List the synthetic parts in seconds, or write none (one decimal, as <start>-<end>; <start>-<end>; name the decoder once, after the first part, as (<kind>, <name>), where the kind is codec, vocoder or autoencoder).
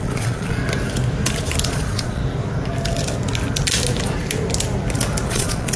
0.0-0.6 (vocoder, Vocos); 1.7-2.2; 5.3-5.8